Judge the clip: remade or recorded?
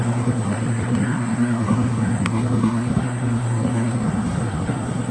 remade